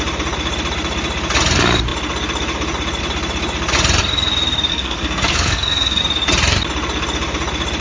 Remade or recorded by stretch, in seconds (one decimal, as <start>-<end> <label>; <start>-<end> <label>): 0.0-4.7 recorded; 4.7-6.0 remade; 6.0-7.8 recorded